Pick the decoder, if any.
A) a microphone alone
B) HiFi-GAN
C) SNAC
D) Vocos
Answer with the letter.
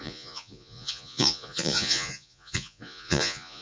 D